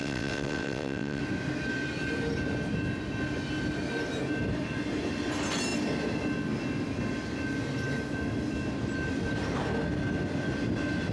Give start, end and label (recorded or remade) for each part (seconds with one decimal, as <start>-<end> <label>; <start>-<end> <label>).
0.0-1.2 remade; 1.2-11.1 recorded

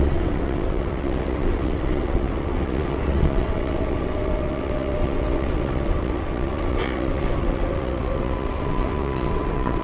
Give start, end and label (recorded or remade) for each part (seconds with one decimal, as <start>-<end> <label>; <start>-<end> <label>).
0.0-9.8 remade

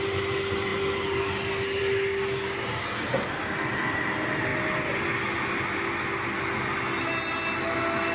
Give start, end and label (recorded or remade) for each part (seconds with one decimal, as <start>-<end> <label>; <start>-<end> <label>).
0.0-8.1 recorded

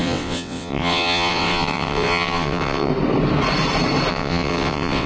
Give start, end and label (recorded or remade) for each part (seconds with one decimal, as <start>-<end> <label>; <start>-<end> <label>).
0.0-2.9 remade; 2.9-4.1 recorded; 4.1-5.1 remade

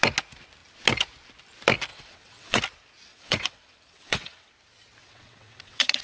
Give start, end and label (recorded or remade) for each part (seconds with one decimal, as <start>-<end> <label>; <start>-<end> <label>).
0.0-1.9 recorded; 1.9-2.6 remade; 2.6-3.1 recorded; 3.1-4.5 remade; 4.5-5.0 recorded; 5.0-6.0 remade

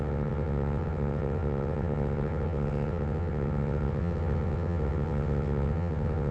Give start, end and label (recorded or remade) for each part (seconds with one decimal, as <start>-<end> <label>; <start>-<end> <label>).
0.0-6.3 remade